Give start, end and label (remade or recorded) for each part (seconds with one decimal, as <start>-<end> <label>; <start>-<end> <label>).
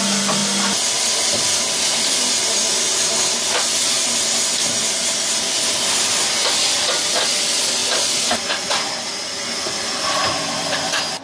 0.0-11.2 recorded